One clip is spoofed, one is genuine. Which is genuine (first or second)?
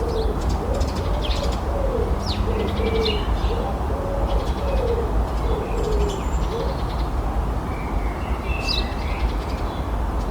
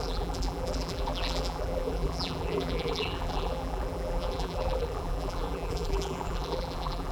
first